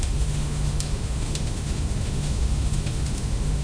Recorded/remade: remade